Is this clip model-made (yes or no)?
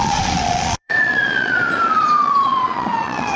yes